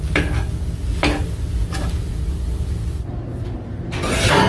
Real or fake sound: real